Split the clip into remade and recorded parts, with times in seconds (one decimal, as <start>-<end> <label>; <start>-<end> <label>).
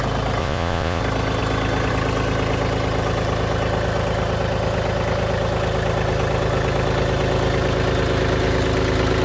0.0-0.4 recorded; 0.4-1.0 remade; 1.0-9.2 recorded